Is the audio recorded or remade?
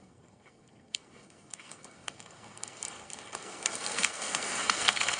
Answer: remade